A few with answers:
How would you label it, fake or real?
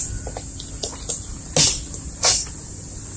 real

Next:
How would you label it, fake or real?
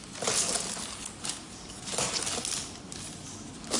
real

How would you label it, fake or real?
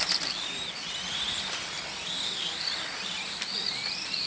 real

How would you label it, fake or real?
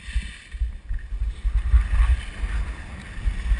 real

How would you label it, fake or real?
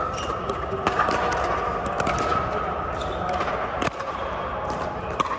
real